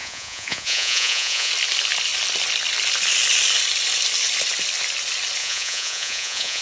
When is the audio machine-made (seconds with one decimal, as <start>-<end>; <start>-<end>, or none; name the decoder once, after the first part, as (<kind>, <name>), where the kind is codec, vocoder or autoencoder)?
0.0-1.5 (vocoder, Vocos); 5.4-6.6